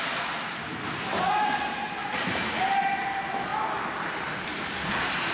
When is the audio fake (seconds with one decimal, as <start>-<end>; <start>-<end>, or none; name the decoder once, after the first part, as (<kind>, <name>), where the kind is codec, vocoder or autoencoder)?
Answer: none